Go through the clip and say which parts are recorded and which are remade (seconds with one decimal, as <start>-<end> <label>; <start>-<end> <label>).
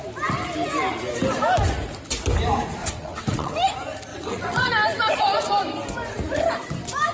0.0-2.8 recorded; 2.8-3.5 remade; 3.5-4.1 recorded; 4.1-4.7 remade; 4.7-7.1 recorded